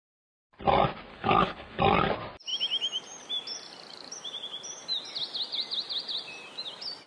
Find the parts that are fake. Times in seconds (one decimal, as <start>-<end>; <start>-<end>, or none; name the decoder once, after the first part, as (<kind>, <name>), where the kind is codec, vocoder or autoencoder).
1.1-1.8 (codec, HILCodec)